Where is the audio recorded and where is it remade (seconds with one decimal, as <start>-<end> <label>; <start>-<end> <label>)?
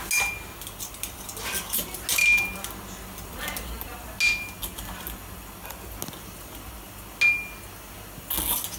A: 0.0-8.8 recorded